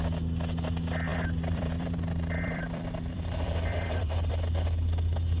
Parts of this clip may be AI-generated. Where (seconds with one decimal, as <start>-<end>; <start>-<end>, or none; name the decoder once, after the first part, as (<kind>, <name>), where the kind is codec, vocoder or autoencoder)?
1.1-4.3 (vocoder, BigVGAN v2)